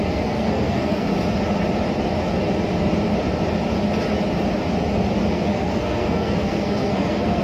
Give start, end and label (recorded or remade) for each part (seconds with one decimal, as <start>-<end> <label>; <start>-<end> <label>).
0.0-1.1 remade; 1.1-5.3 recorded; 5.3-7.4 remade